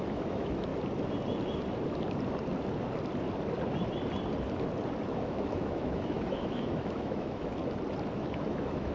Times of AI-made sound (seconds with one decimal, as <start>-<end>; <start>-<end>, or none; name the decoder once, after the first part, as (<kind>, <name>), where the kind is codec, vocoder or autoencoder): 0.0-0.7 (autoencoder, DAC-VAE); 5.0-7.6; 8.1-8.9